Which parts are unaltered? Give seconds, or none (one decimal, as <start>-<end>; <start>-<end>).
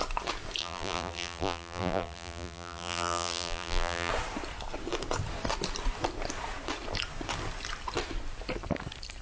0.0-0.6; 4.1-9.2